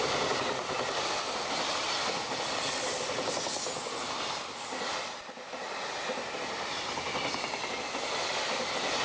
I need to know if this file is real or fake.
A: real